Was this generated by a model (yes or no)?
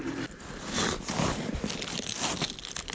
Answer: yes